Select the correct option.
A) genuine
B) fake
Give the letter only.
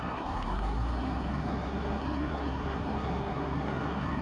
B